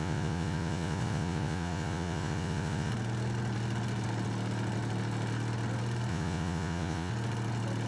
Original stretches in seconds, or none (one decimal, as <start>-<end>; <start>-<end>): 2.9-6.1; 7.1-7.9